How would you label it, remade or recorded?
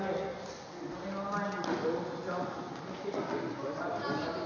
recorded